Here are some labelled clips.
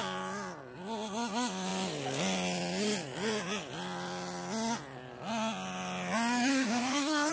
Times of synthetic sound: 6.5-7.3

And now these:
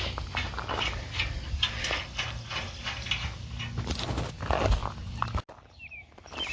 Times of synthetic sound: none

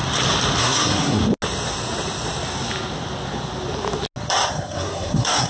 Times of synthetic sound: 0.6-1.2; 4.5-5.5

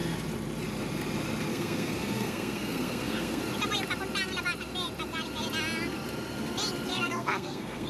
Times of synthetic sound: 1.5-3.4; 6.9-7.9

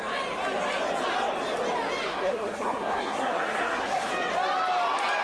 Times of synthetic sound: 2.1-4.1

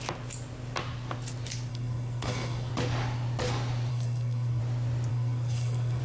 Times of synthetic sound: 1.7-2.7; 3.9-4.6; 5.1-6.0

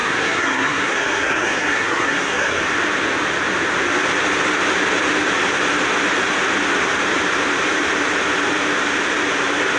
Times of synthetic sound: 0.0-2.6